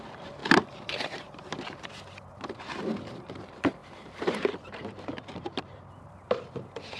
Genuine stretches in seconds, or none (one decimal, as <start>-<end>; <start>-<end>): none